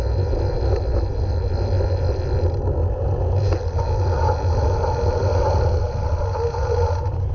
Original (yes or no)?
yes